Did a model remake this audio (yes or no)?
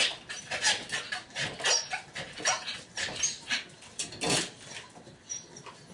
no